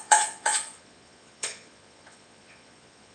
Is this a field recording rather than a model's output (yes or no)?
no